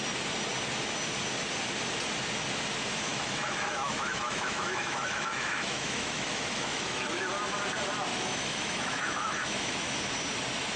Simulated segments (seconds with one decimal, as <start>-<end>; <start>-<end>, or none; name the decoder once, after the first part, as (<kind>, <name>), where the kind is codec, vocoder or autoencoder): 3.1-7.3 (autoencoder, DAC-VAE); 8.1-10.0